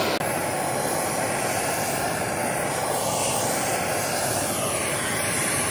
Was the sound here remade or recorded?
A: recorded